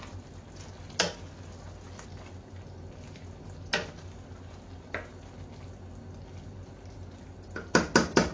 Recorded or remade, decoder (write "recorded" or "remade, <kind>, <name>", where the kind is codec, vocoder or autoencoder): recorded